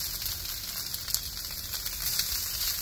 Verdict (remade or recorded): recorded